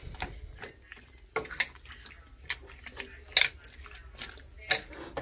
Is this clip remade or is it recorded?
recorded